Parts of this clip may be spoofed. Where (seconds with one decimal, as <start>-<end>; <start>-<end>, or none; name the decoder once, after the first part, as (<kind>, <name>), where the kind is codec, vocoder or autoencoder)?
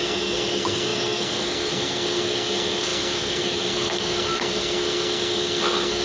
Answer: 0.0-6.0 (codec, SNAC)